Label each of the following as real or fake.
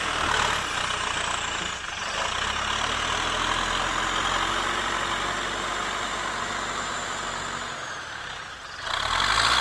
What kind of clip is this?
real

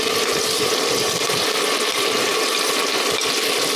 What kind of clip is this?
real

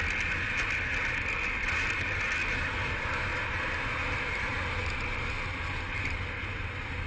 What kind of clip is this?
real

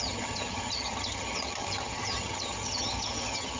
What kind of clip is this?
fake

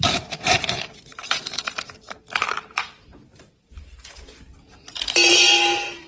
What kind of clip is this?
fake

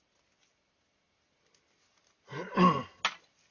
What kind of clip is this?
real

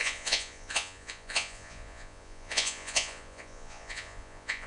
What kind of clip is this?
fake